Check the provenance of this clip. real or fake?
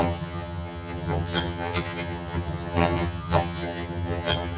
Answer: fake